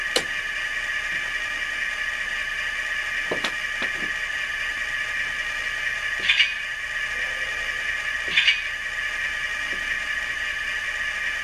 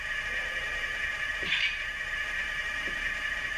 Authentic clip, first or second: first